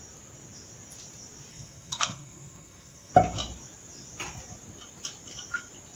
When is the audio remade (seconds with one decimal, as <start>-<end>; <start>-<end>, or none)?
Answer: 1.5-3.1